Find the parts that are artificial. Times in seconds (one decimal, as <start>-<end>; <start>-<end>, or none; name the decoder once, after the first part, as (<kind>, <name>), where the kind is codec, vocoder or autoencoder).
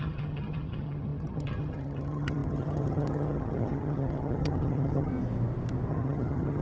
0.0-5.1 (vocoder, HiFi-GAN); 5.9-6.6